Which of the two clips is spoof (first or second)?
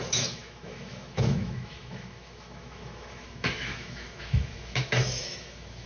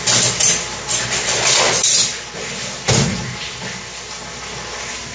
first